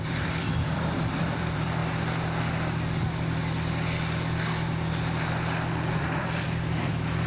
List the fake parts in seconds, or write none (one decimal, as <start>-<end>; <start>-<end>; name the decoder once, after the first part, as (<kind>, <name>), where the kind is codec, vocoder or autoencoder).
0.0-1.8 (vocoder, BigVGAN v2); 6.2-7.3